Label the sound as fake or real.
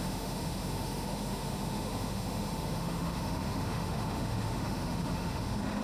fake